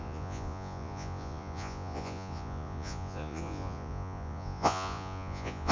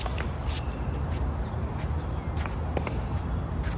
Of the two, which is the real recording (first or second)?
second